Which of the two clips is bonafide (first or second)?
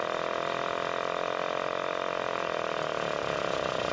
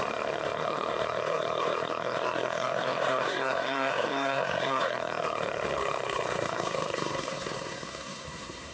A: first